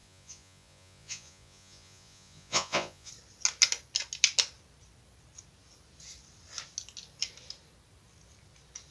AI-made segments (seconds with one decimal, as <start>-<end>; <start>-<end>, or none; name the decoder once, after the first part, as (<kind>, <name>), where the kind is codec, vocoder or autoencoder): 0.0-3.1 (vocoder, Vocos)